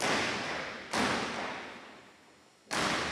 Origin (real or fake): real